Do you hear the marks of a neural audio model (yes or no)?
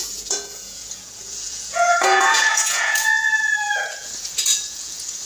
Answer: yes